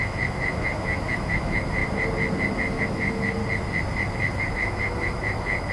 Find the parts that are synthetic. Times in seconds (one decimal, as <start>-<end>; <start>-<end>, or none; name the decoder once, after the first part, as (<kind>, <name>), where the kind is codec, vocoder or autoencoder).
0.0-1.8 (autoencoder, DAC-VAE); 2.5-3.4; 4.4-5.7